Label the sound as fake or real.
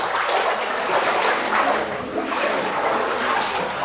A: real